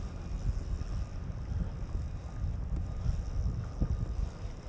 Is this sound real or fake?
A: real